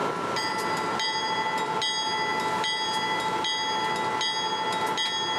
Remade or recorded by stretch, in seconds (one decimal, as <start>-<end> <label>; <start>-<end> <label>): 0.0-5.4 recorded